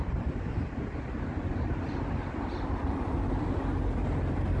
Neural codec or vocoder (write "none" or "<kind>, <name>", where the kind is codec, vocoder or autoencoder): none